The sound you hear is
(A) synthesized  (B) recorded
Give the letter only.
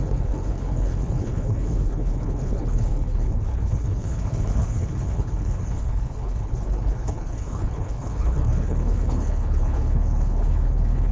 A